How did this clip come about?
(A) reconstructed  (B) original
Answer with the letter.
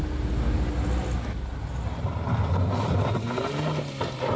B